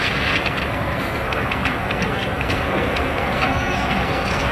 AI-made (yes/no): yes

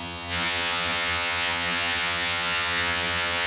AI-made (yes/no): yes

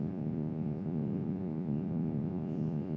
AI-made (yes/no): yes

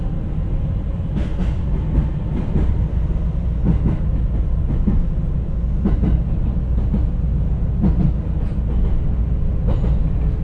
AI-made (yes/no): no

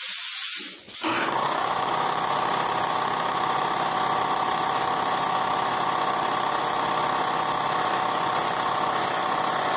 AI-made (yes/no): yes